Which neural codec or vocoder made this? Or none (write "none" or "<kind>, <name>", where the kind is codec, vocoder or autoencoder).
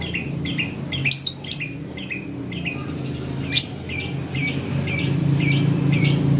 none